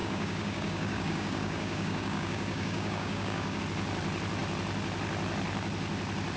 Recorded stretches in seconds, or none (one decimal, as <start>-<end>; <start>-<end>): 3.6-6.4